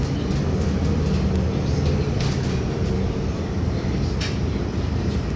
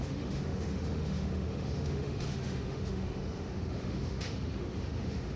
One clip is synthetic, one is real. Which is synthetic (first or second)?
second